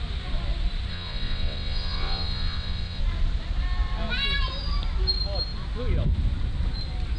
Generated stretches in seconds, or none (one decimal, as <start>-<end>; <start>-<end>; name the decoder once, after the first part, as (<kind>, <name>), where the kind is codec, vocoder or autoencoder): 0.9-3.0 (vocoder, WaveNeXt)